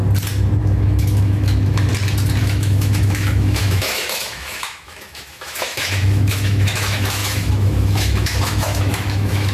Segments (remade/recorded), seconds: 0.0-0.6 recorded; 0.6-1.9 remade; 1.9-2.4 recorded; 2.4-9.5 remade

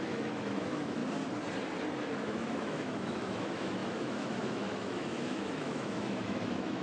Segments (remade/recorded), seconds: 0.0-1.0 remade; 1.0-2.1 recorded; 2.1-6.8 remade

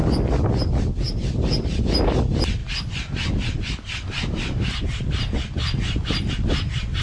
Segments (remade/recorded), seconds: 0.0-7.0 recorded

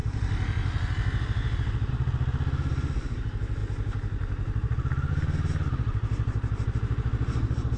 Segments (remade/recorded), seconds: 0.0-7.8 recorded

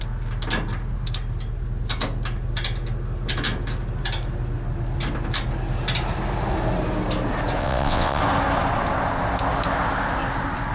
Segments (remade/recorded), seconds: 0.0-7.6 recorded; 7.6-8.2 remade; 8.2-10.7 recorded

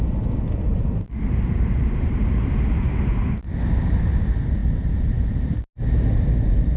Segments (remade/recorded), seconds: 0.0-0.7 recorded; 0.7-3.0 remade; 3.0-4.6 recorded; 4.6-5.7 remade; 5.7-6.8 recorded